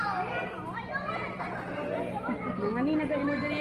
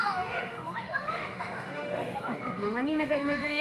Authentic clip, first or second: first